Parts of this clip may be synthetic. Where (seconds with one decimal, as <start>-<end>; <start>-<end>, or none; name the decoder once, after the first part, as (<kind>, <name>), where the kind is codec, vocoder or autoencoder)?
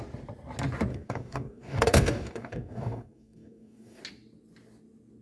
0.9-4.0 (codec, DAC)